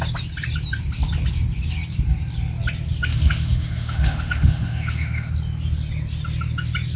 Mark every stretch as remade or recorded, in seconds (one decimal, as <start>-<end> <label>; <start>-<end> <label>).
0.0-3.1 recorded; 3.1-5.3 remade; 5.3-7.0 recorded